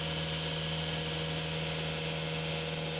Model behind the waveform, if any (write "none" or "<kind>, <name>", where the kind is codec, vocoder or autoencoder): none